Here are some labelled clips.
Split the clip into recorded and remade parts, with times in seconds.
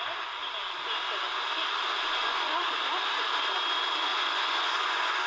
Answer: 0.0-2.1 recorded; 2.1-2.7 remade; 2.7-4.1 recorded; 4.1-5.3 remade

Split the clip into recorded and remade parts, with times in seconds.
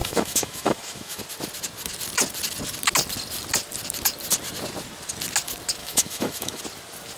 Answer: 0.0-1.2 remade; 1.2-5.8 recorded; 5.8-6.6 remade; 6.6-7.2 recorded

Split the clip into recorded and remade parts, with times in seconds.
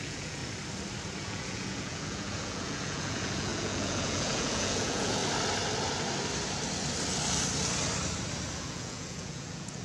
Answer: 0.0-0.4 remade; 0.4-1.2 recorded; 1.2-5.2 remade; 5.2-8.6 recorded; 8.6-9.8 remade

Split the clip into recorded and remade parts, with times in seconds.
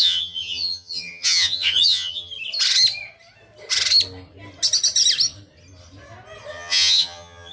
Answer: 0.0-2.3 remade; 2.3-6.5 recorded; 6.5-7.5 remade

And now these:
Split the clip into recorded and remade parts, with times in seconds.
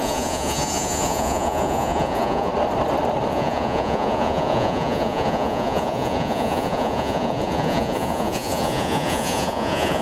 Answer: 0.0-2.5 remade; 2.5-3.3 recorded; 3.3-10.0 remade